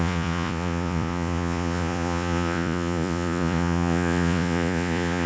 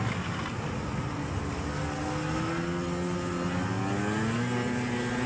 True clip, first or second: second